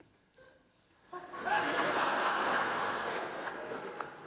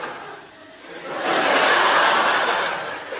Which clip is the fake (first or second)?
first